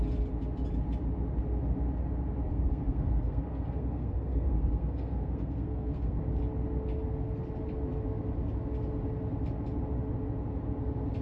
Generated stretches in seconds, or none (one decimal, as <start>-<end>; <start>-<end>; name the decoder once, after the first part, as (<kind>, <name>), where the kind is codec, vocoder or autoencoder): 2.5-6.2 (codec, SNAC)